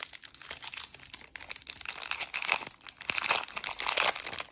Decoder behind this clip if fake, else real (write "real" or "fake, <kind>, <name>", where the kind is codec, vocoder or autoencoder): real